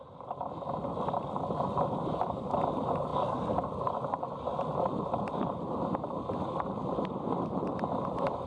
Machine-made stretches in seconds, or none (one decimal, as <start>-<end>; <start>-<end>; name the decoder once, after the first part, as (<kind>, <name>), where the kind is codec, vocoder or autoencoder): none